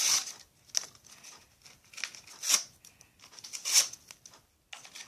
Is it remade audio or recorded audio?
recorded